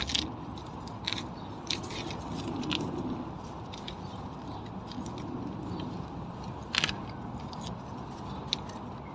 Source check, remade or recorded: recorded